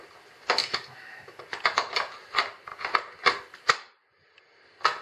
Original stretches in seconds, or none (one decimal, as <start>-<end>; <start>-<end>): 0.0-0.6; 1.4-5.0